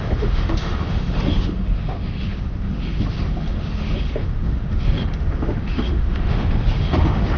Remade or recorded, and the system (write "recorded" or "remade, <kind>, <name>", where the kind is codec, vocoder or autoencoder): remade, autoencoder, DAC-VAE